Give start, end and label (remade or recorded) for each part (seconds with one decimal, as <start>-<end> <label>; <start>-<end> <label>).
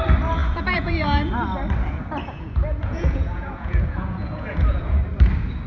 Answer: 0.0-0.4 recorded; 0.4-1.3 remade; 1.3-2.2 recorded; 2.2-5.0 remade; 5.0-5.7 recorded